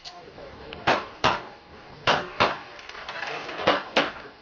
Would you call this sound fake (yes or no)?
yes